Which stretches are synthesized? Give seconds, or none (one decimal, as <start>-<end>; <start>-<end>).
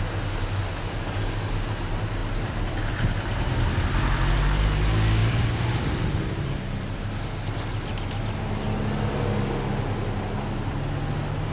2.2-4.3; 5.2-7.0